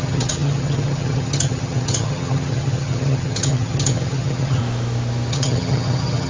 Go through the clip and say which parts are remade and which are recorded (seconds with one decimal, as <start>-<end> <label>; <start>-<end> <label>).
0.0-4.6 remade; 4.6-5.3 recorded; 5.3-6.3 remade

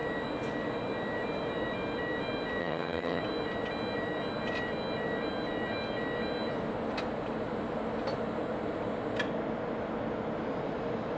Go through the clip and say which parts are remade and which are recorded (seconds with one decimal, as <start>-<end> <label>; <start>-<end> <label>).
0.0-2.6 recorded; 2.6-3.2 remade; 3.2-11.2 recorded

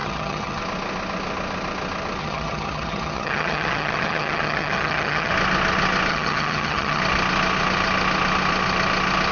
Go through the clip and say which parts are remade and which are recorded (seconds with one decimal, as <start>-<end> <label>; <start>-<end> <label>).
0.0-0.6 remade; 0.6-2.2 recorded; 2.2-5.3 remade; 5.3-6.1 recorded; 6.1-7.0 remade; 7.0-9.3 recorded

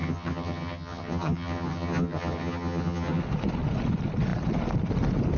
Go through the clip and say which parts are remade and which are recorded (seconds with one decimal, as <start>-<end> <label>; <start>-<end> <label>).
0.0-3.2 remade; 3.2-5.4 recorded

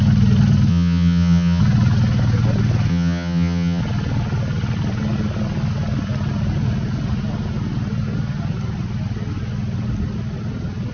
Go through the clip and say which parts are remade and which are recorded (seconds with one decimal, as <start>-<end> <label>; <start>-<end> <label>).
0.0-0.7 recorded; 0.7-1.6 remade; 1.6-2.9 recorded; 2.9-3.8 remade; 3.8-10.9 recorded

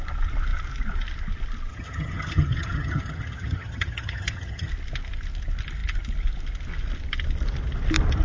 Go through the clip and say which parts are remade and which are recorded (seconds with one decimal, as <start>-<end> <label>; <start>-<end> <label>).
0.0-1.7 recorded; 1.7-4.7 remade; 4.7-8.2 recorded

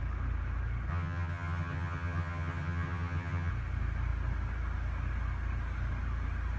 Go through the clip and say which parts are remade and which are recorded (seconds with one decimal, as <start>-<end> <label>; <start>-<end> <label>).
0.0-0.9 recorded; 0.9-3.5 remade; 3.5-6.6 recorded